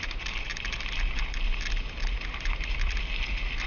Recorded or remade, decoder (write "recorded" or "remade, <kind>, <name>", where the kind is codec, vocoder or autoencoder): recorded